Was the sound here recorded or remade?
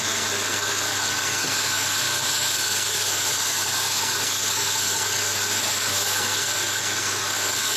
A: remade